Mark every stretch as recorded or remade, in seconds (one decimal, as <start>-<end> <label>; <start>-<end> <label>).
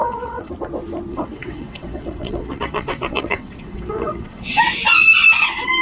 0.0-0.5 remade; 0.5-1.1 recorded; 1.1-4.6 remade; 4.6-5.8 recorded